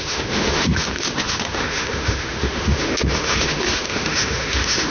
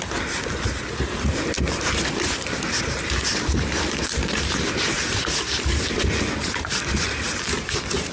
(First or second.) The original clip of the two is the second